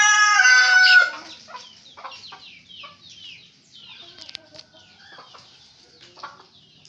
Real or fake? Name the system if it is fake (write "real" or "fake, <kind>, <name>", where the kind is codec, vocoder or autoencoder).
real